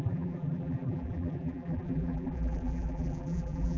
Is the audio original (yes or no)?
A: no